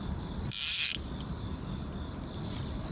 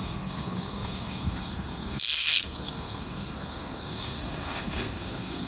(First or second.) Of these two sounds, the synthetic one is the second